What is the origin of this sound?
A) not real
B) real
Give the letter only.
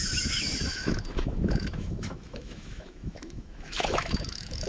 A